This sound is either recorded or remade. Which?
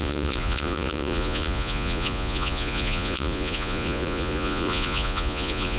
remade